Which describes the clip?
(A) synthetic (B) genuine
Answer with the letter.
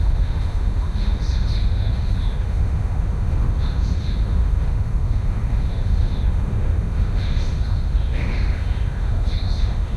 A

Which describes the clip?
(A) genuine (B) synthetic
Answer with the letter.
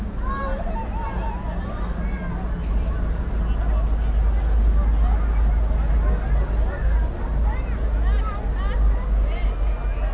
A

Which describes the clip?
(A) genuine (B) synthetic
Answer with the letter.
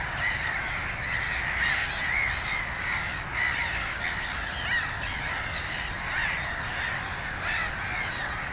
A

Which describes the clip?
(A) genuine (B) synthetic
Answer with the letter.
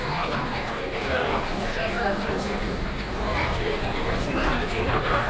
B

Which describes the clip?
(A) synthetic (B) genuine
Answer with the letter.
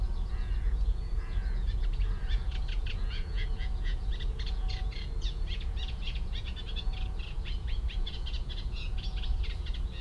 A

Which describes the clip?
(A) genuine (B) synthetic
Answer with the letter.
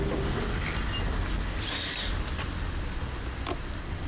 A